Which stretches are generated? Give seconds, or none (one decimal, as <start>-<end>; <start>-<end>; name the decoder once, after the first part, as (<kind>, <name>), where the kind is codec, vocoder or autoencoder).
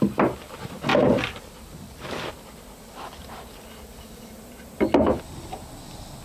0.9-4.0 (vocoder, BigVGAN v2)